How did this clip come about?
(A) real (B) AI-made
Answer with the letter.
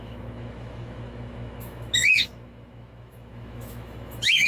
B